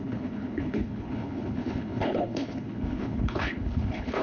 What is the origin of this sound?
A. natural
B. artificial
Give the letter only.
B